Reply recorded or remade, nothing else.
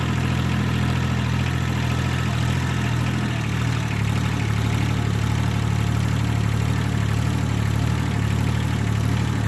recorded